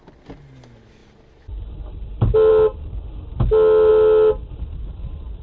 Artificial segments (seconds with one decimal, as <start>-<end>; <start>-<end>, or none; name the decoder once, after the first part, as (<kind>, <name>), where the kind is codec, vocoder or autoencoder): none